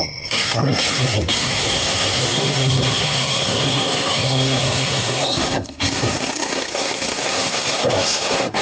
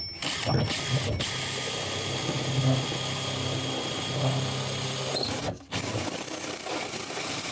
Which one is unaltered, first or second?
second